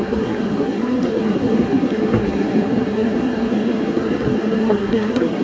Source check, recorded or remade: remade